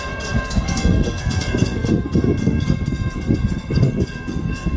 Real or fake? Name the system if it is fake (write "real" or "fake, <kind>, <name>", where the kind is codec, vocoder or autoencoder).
fake, codec, SNAC